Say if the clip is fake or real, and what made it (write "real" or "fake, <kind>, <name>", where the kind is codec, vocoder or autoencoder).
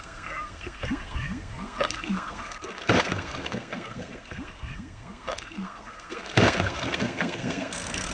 fake, codec, SNAC